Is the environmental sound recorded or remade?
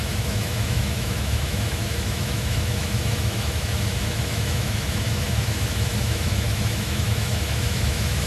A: remade